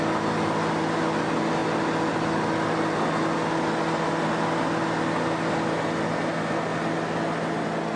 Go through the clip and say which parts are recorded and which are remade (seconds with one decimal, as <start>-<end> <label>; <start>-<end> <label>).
0.0-8.0 recorded